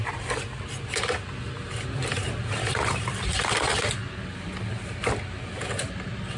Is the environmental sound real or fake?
real